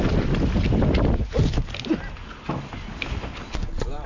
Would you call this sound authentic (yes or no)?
yes